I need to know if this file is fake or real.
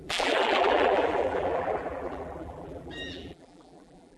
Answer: fake